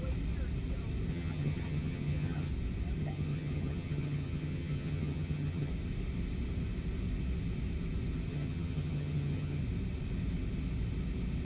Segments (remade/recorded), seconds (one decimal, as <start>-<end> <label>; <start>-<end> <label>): 0.0-1.1 recorded; 1.1-2.5 remade; 2.5-3.0 recorded; 3.0-5.7 remade; 5.7-8.3 recorded; 8.3-9.6 remade; 9.6-11.4 recorded